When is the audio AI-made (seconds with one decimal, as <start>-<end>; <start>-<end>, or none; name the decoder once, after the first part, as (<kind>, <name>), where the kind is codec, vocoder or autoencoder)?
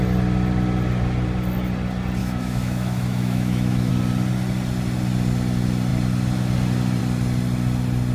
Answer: 2.2-3.9 (autoencoder, DAC-VAE)